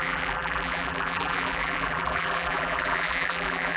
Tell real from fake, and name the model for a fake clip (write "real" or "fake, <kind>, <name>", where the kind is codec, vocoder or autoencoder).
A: fake, vocoder, BigVGAN v2